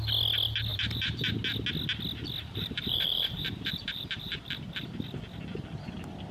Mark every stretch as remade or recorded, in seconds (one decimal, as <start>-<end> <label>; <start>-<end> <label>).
0.0-0.7 recorded; 0.7-1.3 remade; 1.3-2.4 recorded; 2.4-4.4 remade; 4.4-6.3 recorded